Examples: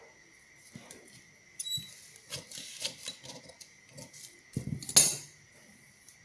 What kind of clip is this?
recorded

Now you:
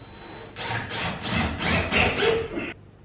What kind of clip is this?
recorded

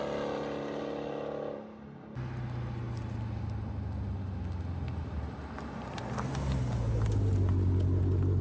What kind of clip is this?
recorded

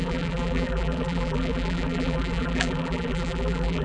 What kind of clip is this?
remade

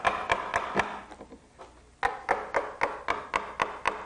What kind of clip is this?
recorded